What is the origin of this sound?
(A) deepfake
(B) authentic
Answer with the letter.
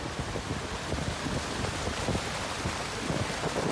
B